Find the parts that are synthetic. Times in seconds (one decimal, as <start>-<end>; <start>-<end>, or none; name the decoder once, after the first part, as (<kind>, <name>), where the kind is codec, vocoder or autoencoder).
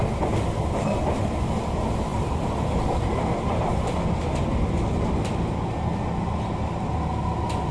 none